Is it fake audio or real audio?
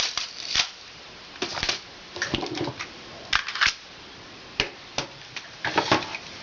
fake